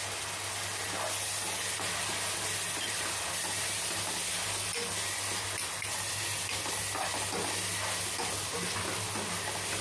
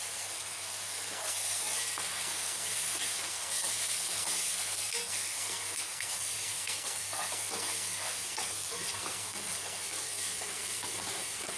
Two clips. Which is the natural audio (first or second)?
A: first